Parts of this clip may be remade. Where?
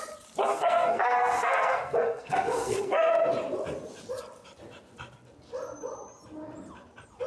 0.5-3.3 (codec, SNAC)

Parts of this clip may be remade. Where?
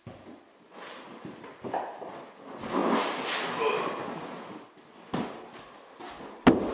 none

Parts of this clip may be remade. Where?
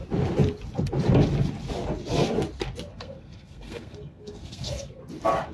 2.9-5.0 (codec, SNAC)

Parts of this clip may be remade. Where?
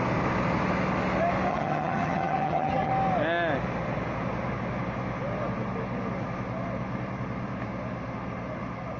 1.5-2.9 (vocoder, HiFi-GAN)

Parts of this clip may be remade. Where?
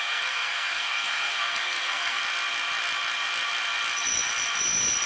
0.0-2.2 (codec, SNAC)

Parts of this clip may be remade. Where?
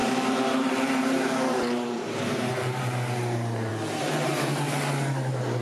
0.0-2.8 (vocoder, BigVGAN v2)